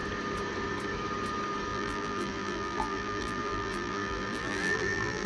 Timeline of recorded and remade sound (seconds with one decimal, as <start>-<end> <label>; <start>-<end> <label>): 0.0-1.7 recorded; 1.7-5.3 remade